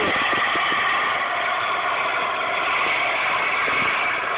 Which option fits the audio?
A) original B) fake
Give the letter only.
A